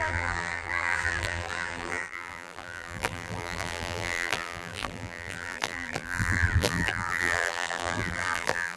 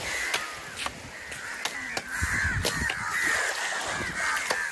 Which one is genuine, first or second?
second